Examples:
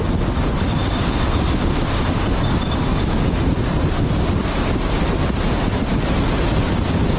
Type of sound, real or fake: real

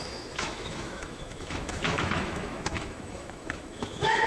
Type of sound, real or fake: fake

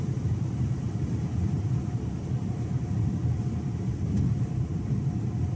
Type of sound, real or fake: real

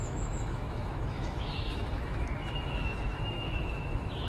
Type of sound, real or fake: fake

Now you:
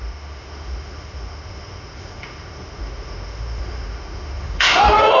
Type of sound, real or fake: fake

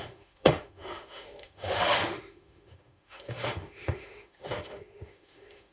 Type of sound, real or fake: fake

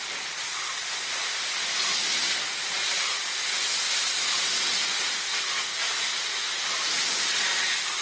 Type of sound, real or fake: real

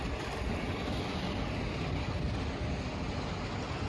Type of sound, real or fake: real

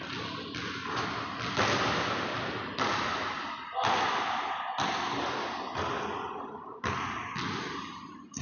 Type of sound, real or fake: real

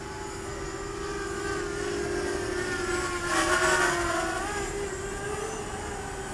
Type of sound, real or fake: real